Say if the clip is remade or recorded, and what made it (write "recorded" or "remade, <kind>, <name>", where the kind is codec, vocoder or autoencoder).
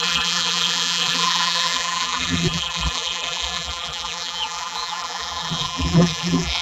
remade, vocoder, BigVGAN v2